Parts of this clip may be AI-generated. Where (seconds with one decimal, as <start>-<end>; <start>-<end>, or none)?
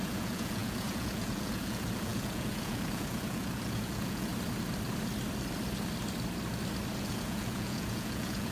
0.0-4.3; 7.0-8.5